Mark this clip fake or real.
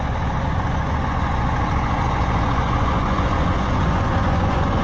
fake